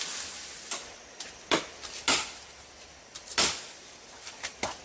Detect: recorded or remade recorded